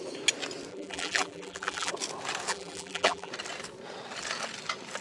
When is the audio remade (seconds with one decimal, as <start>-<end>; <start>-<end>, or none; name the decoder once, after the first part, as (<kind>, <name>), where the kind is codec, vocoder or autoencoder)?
0.7-1.9 (vocoder, BigVGAN v2); 2.5-3.3